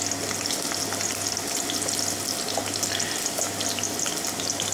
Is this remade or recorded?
recorded